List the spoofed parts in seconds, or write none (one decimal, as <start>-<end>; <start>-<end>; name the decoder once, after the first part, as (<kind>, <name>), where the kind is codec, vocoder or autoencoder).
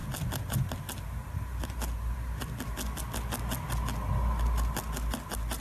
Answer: none